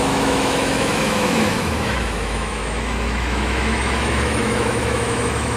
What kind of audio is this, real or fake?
fake